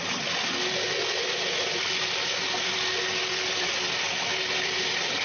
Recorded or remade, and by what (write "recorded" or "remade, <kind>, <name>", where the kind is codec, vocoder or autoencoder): recorded